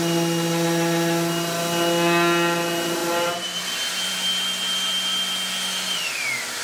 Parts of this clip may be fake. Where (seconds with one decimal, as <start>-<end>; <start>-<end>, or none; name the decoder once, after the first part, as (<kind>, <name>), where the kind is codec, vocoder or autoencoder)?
none